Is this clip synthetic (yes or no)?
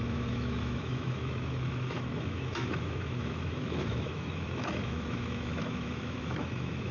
yes